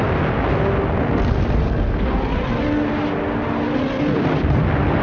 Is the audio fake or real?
real